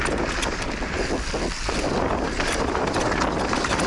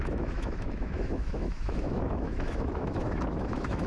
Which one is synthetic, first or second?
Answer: second